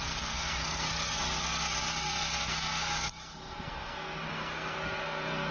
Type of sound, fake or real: fake